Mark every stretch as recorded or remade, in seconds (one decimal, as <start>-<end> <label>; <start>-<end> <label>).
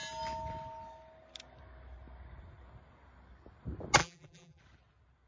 0.0-4.0 recorded; 4.0-4.6 remade; 4.6-5.3 recorded